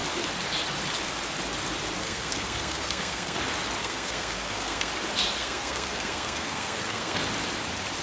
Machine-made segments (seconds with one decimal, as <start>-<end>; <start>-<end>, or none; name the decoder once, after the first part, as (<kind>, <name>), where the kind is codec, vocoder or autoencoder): 2.0-3.4 (codec, SNAC); 3.8-4.9; 5.4-7.2